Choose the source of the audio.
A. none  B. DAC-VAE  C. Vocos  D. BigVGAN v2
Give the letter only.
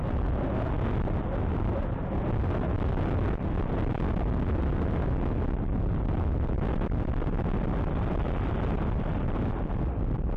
A